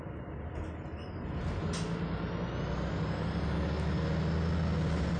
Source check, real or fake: real